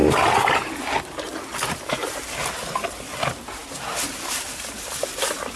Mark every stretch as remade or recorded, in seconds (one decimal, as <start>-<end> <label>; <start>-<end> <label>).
0.0-5.6 recorded